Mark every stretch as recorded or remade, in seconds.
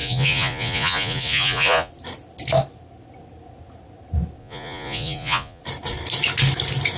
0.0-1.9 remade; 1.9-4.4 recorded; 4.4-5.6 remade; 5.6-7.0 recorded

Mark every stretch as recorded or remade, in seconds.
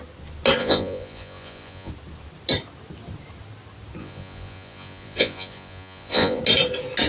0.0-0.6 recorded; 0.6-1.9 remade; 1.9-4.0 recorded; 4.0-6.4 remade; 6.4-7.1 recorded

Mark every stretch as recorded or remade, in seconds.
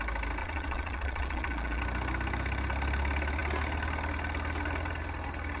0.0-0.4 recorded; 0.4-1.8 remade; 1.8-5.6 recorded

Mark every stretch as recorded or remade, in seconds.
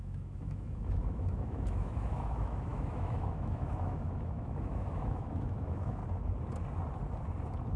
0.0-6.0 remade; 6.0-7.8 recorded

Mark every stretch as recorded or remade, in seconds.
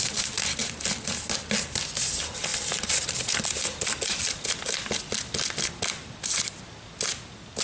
0.0-7.6 recorded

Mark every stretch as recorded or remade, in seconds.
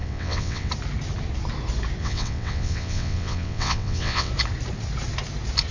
0.0-0.7 remade; 0.7-2.0 recorded; 2.0-4.3 remade; 4.3-5.7 recorded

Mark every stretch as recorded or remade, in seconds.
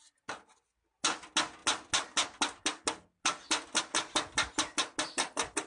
0.0-5.7 recorded